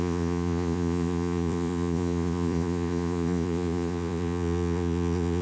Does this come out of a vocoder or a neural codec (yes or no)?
yes